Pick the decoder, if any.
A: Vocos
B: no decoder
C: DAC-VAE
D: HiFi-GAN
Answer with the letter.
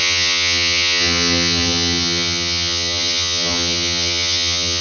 D